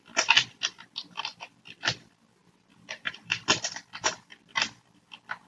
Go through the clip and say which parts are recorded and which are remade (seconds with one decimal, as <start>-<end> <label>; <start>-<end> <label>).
0.0-2.4 recorded; 2.4-3.3 remade; 3.3-5.5 recorded